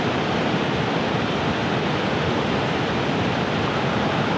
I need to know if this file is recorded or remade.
recorded